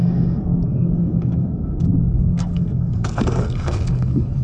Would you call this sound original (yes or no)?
no